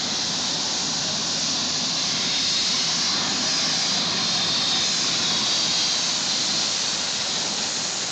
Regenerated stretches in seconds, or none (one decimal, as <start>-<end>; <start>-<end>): none